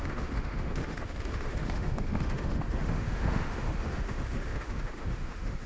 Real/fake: fake